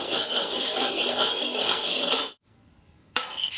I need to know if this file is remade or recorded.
remade